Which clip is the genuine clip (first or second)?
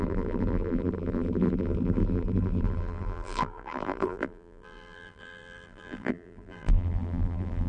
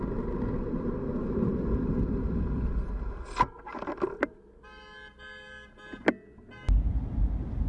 second